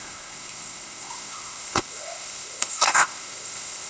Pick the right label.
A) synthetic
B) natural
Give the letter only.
A